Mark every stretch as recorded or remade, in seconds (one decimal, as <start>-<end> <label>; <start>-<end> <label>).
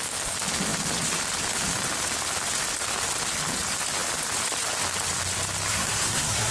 0.0-5.7 recorded; 5.7-6.5 remade